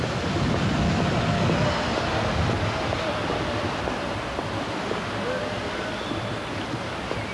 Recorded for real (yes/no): yes